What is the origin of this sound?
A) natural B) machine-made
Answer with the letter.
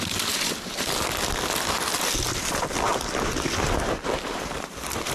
A